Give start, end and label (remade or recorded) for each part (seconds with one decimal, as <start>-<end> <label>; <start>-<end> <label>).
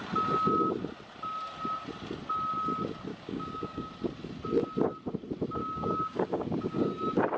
0.0-3.1 recorded; 3.1-3.9 remade; 3.9-5.6 recorded; 5.6-6.9 remade; 6.9-7.4 recorded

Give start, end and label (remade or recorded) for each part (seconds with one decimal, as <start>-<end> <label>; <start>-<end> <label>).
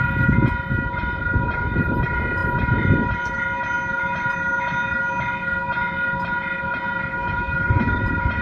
0.0-7.1 recorded; 7.1-8.0 remade; 8.0-8.4 recorded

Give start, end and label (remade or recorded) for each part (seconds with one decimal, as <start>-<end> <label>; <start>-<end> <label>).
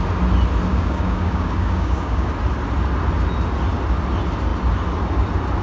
0.0-0.7 recorded; 0.7-2.3 remade; 2.3-5.6 recorded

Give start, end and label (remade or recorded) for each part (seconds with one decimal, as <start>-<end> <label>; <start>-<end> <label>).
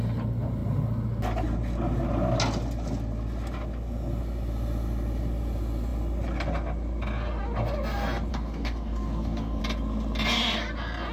0.0-8.3 recorded; 8.3-9.6 remade; 9.6-11.1 recorded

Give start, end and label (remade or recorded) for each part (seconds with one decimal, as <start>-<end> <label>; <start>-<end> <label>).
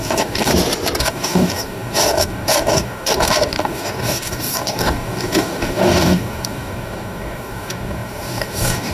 0.0-0.5 remade; 0.5-1.0 recorded; 1.0-8.9 remade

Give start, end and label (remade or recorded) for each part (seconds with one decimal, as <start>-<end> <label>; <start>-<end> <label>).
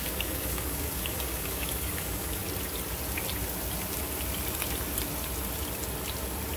0.0-2.4 remade; 2.4-6.6 recorded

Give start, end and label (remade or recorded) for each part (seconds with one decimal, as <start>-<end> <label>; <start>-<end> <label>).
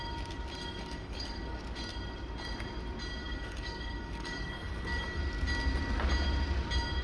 0.0-0.6 recorded; 0.6-1.6 remade; 1.6-3.2 recorded; 3.2-5.2 remade; 5.2-7.0 recorded